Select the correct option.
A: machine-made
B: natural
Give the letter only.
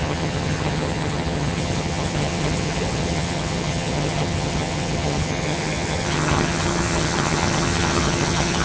A